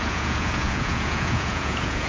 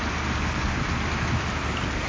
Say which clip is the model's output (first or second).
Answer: first